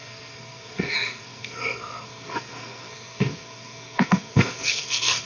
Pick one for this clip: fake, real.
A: fake